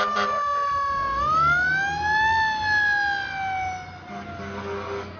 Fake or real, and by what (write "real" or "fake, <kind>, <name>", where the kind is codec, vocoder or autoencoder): real